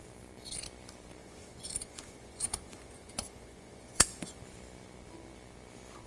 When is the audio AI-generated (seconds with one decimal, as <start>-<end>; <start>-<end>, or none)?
1.2-4.4